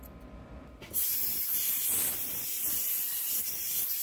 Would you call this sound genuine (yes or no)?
yes